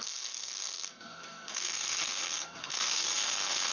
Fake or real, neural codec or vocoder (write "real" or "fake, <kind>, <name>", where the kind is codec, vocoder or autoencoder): fake, codec, SNAC